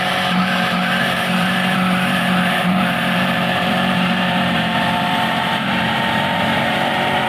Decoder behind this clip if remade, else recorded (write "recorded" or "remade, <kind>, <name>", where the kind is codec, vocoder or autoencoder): remade, vocoder, BigVGAN v2